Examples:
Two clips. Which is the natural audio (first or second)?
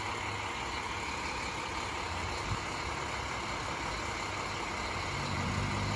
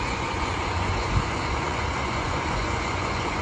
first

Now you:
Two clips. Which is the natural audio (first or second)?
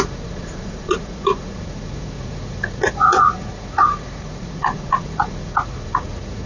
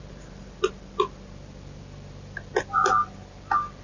second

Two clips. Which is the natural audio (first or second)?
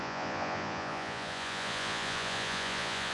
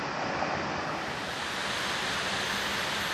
second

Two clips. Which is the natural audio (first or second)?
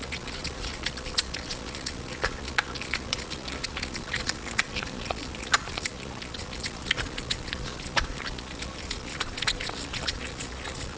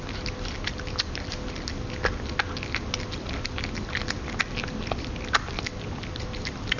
second